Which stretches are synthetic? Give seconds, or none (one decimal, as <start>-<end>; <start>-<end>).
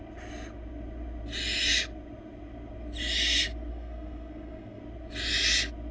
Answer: 3.7-4.8